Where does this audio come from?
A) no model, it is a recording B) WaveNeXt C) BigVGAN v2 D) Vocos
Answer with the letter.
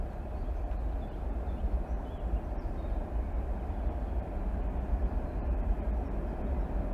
A